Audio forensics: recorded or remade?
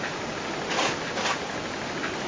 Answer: recorded